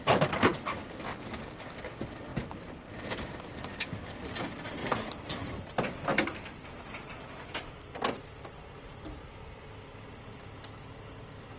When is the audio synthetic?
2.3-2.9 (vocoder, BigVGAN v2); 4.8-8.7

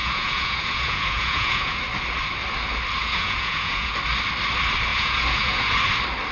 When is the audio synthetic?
0.0-1.8 (vocoder, Vocos); 3.0-3.9; 4.9-5.7

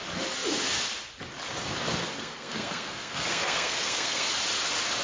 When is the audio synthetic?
2.0-4.3 (codec, SNAC)

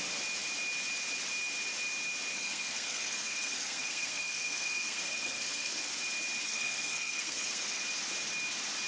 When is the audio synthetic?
2.3-5.9 (codec, SNAC); 6.4-7.8

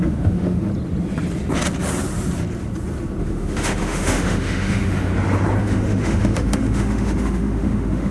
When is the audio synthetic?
0.0-0.7 (autoencoder, DAC-VAE); 3.2-5.1; 5.6-8.1

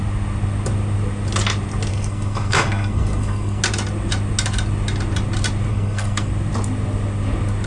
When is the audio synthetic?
1.9-3.6 (codec, SNAC); 5.7-6.3

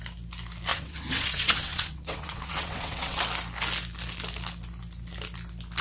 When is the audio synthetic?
0.7-3.2 (vocoder, WaveNeXt)